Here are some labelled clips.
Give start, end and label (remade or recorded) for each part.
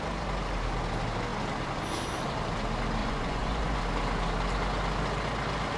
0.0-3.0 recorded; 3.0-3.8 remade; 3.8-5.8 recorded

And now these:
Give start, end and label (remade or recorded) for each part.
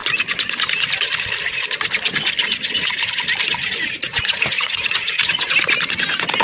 0.0-4.0 recorded; 4.0-5.5 remade; 5.5-6.4 recorded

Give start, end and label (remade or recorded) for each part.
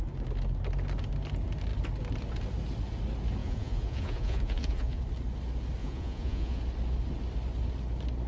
0.0-3.4 recorded; 3.4-5.0 remade; 5.0-5.8 recorded; 5.8-6.6 remade; 6.6-8.3 recorded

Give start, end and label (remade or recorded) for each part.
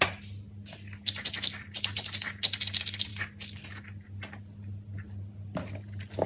0.0-6.3 recorded